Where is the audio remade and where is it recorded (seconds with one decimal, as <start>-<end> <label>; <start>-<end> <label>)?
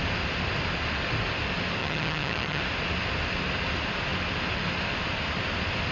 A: 0.0-1.8 recorded; 1.8-2.6 remade; 2.6-5.9 recorded